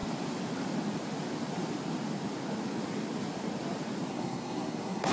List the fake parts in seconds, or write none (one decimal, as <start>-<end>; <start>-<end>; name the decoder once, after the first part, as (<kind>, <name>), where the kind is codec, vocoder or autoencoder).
4.1-5.1 (codec, SNAC)